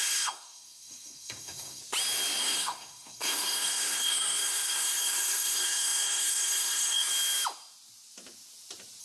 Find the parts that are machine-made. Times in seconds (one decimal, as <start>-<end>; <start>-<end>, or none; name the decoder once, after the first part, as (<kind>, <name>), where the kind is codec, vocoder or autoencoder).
0.0-1.8 (codec, SNAC); 2.4-7.1